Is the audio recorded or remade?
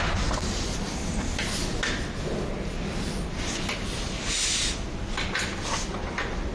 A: recorded